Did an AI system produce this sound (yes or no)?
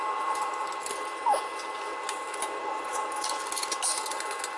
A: no